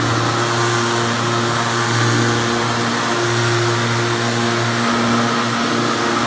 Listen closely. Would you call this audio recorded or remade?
recorded